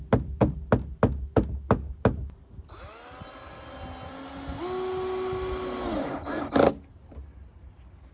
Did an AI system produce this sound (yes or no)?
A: no